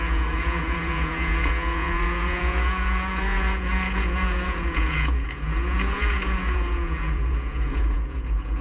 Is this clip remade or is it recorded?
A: remade